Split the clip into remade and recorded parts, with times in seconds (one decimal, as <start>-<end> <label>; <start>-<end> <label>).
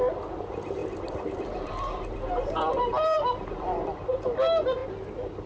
0.0-0.8 recorded; 0.8-4.1 remade; 4.1-5.5 recorded